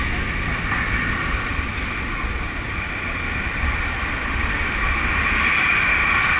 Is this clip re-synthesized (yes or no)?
no